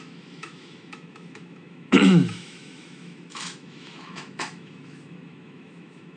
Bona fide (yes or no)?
no